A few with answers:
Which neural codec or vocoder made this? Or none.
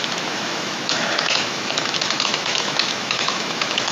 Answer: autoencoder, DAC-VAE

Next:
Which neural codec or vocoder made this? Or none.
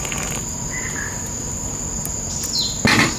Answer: none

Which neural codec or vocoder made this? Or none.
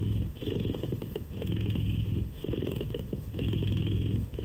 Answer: autoencoder, DAC-VAE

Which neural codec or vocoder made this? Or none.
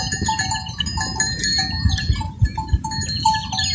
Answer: none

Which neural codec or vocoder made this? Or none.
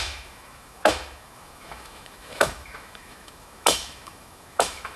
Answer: autoencoder, DAC-VAE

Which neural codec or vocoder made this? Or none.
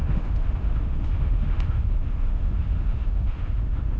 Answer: autoencoder, DAC-VAE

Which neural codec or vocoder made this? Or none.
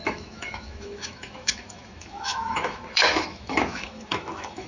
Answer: autoencoder, DAC-VAE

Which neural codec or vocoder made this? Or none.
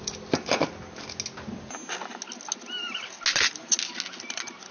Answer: none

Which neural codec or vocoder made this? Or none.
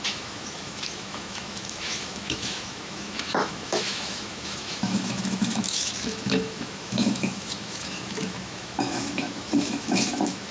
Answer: autoencoder, DAC-VAE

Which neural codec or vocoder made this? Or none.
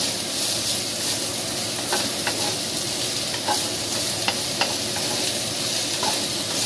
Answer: none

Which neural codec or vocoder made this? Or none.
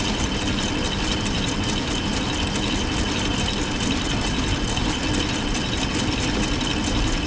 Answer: none